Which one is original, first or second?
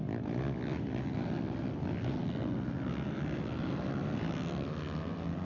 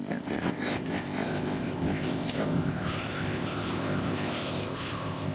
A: first